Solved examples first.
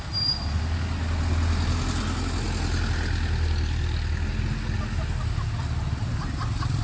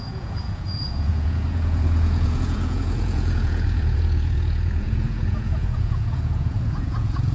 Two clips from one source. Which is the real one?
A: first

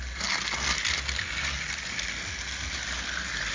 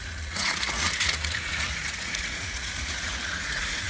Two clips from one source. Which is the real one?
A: first